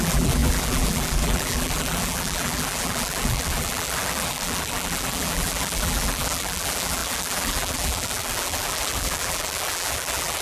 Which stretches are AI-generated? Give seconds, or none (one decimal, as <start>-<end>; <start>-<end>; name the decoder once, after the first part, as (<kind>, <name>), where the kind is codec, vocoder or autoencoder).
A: 0.0-10.4 (vocoder, BigVGAN v2)